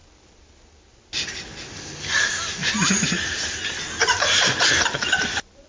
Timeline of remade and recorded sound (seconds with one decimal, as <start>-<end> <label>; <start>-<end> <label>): 0.0-1.3 recorded; 1.3-2.6 remade; 2.6-4.6 recorded; 4.6-5.7 remade